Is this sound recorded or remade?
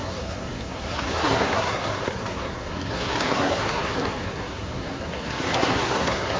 remade